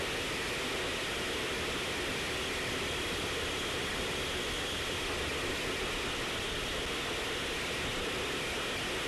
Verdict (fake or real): real